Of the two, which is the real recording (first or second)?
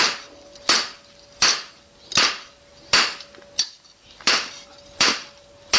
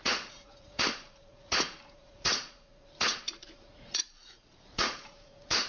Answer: first